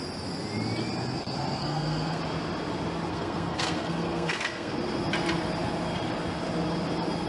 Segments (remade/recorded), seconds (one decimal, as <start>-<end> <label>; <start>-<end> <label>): 0.0-1.6 recorded; 1.6-2.2 remade; 2.2-3.1 recorded; 3.1-4.7 remade; 4.7-7.3 recorded